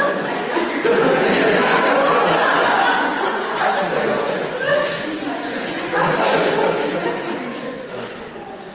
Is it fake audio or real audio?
fake